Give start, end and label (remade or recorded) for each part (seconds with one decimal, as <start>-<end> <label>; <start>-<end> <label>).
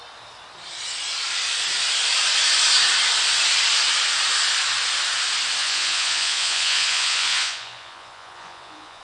0.0-5.6 recorded; 5.6-9.0 remade